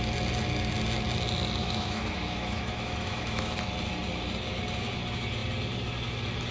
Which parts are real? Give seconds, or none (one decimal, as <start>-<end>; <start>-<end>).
0.0-1.6; 3.5-6.5